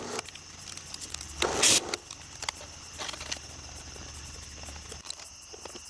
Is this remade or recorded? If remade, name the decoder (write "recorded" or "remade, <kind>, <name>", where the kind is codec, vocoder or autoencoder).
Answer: recorded